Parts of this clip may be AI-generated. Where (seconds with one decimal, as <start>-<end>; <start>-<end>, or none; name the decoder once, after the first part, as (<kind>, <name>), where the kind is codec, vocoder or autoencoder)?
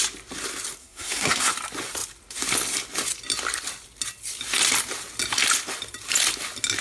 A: 0.8-1.5 (codec, SNAC)